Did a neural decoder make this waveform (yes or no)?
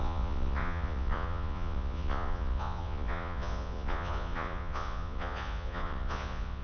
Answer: yes